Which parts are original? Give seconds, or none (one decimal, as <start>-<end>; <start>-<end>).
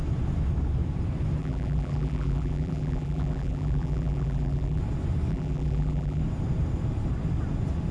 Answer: 0.0-1.4; 4.8-5.3; 6.2-7.9